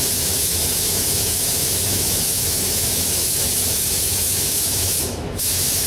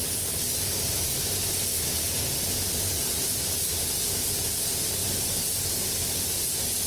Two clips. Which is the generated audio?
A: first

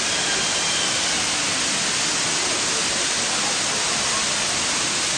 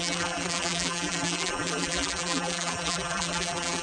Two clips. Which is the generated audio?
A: second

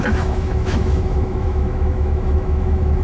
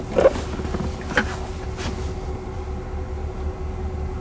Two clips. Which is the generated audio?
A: first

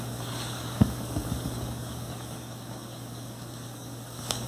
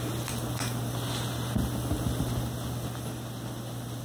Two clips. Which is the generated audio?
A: first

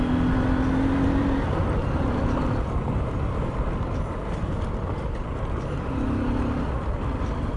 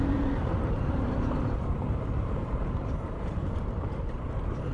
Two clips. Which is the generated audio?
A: second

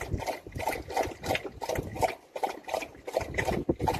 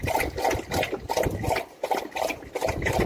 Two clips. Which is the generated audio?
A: first